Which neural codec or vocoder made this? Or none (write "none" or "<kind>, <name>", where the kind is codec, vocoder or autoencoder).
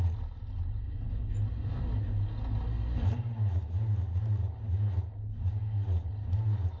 none